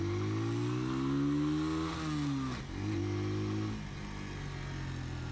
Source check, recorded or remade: recorded